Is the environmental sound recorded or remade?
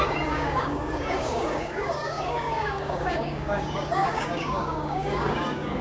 remade